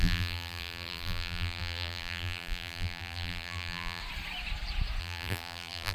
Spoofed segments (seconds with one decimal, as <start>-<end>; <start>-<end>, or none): 0.0-4.0; 5.0-5.9